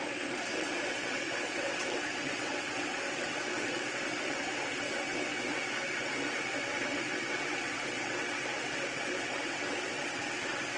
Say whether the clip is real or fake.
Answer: fake